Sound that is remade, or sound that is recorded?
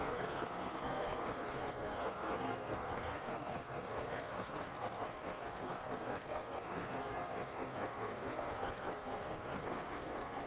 remade